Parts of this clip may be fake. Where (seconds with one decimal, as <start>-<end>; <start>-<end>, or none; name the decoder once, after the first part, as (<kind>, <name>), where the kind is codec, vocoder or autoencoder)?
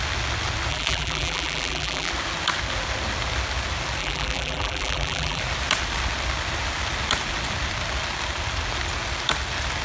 0.7-2.1 (vocoder, BigVGAN v2); 4.0-5.4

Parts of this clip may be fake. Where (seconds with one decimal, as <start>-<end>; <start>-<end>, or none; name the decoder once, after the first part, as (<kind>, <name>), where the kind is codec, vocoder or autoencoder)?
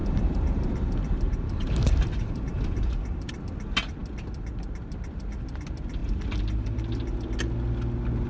0.0-3.4 (vocoder, BigVGAN v2); 6.0-7.2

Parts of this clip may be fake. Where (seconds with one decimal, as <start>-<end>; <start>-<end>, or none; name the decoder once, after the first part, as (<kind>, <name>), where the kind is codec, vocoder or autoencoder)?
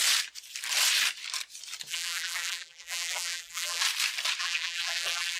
1.9-3.8 (vocoder, BigVGAN v2); 4.4-5.4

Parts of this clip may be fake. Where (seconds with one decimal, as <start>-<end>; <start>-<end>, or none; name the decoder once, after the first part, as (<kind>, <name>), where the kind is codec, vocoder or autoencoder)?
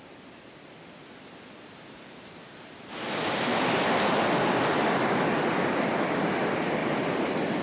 0.0-3.5 (vocoder, BigVGAN v2); 4.3-7.6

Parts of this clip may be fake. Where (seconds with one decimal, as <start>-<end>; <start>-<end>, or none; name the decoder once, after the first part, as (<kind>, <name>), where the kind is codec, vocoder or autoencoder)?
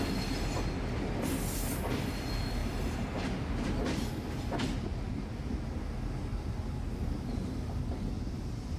6.3-8.0 (vocoder, BigVGAN v2)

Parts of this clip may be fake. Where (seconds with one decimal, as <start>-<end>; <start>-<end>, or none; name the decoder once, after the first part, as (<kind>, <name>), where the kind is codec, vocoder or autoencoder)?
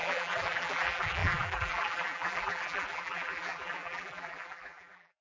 0.0-5.2 (vocoder, BigVGAN v2)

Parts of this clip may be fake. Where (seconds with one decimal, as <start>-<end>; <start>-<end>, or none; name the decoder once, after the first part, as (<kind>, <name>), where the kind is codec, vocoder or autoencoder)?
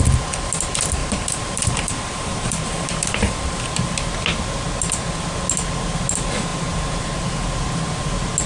1.0-3.6 (vocoder, BigVGAN v2)